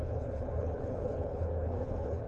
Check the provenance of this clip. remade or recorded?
remade